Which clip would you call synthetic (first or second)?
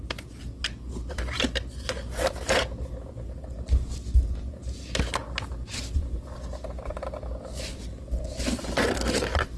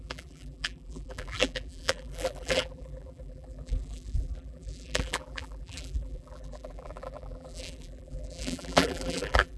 second